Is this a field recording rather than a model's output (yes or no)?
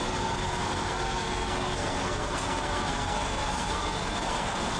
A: no